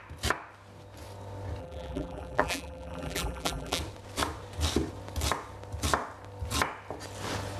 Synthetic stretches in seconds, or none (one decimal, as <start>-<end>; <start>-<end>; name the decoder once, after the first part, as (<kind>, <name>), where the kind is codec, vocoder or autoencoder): 1.6-3.8 (vocoder, BigVGAN v2)